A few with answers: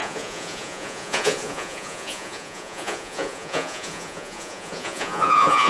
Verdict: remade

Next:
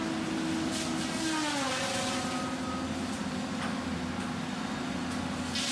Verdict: recorded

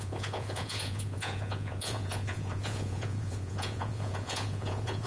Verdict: remade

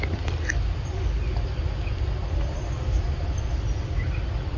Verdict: recorded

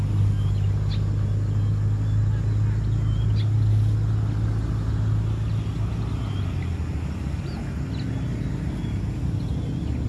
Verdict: recorded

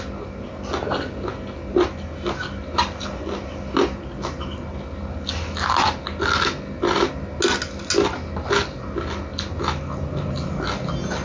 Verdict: recorded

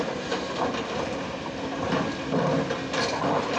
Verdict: recorded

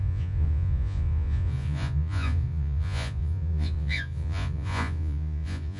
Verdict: remade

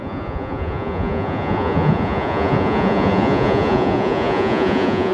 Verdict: remade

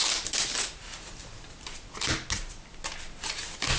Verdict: recorded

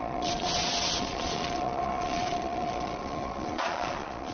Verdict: remade